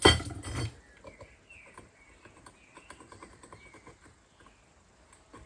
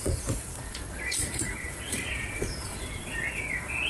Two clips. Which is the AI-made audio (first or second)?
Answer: second